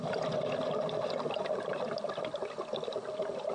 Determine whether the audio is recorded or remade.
recorded